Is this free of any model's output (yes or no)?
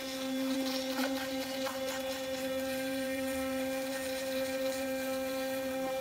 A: no